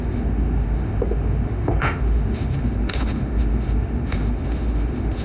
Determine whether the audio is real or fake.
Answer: fake